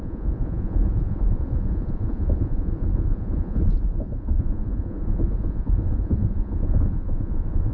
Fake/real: fake